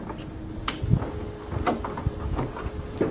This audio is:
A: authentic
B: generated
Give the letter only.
A